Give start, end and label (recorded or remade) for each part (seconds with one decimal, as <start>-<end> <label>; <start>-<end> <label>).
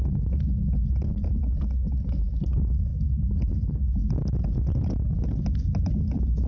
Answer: 0.0-6.5 recorded